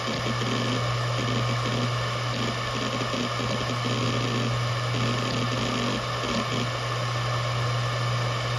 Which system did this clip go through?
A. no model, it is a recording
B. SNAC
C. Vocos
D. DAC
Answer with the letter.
A